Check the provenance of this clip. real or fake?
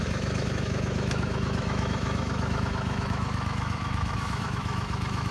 fake